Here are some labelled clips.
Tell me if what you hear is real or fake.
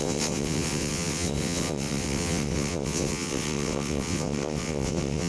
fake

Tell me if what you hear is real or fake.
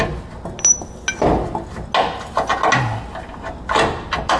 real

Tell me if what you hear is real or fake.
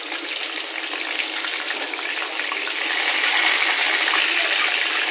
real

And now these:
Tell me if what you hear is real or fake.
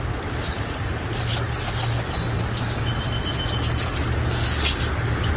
real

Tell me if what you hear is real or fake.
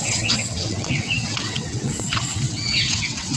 fake